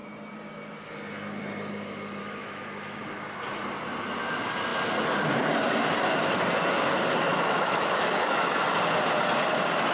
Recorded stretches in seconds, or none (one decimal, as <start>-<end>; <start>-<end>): 0.0-2.2; 3.0-7.3; 8.5-9.9